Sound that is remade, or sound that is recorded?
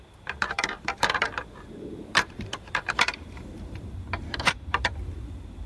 remade